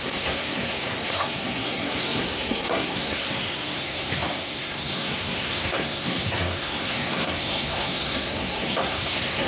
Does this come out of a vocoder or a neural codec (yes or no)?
yes